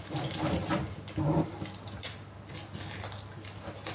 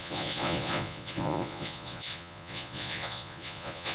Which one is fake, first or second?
second